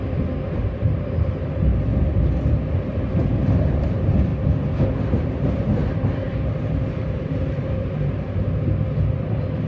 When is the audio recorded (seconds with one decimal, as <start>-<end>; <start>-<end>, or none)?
1.7-2.7; 4.3-5.2

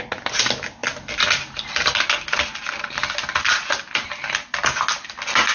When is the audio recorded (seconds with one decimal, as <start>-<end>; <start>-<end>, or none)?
0.0-5.5

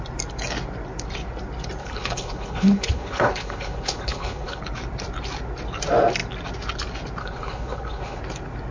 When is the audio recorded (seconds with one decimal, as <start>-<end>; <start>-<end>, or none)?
0.0-1.8; 4.6-7.2; 8.2-8.7

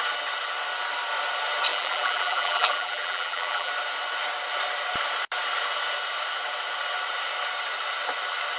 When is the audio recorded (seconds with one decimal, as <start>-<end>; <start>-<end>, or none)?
0.0-1.7; 3.7-8.6

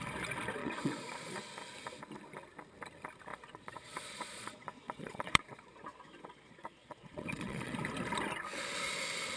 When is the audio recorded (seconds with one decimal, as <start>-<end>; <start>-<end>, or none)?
0.0-0.6; 1.4-3.3; 7.7-9.4